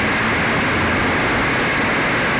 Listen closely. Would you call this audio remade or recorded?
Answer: recorded